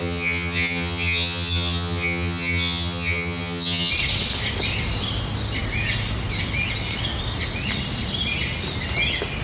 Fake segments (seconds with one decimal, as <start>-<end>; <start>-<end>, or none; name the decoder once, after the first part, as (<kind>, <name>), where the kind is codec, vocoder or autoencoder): 0.0-3.9 (vocoder, HiFi-GAN)